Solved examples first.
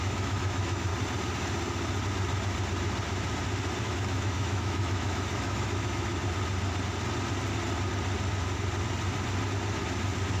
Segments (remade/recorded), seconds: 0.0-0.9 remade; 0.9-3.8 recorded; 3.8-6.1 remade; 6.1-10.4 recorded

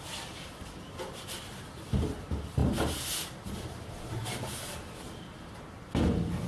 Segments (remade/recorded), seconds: 0.0-6.5 recorded

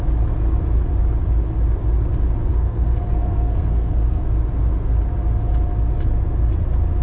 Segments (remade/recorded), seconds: 0.0-2.5 recorded; 2.5-4.2 remade; 4.2-7.0 recorded

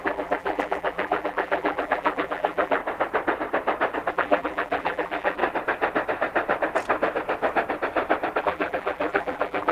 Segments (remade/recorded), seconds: 0.0-2.8 remade; 2.8-4.1 recorded; 4.1-5.4 remade; 5.4-8.4 recorded; 8.4-9.7 remade